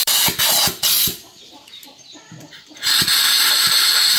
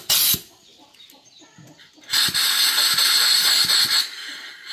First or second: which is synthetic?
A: first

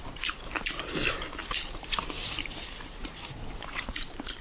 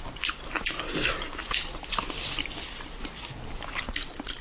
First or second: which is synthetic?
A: first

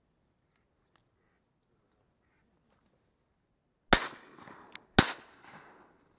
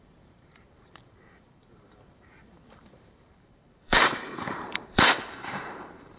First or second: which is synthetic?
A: second